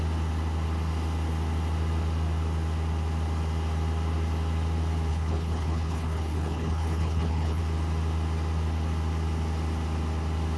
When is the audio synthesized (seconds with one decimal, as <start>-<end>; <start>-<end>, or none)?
5.1-7.6